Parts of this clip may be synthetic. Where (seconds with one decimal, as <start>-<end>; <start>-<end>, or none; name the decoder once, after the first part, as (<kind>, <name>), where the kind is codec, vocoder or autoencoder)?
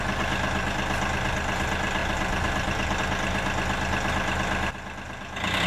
none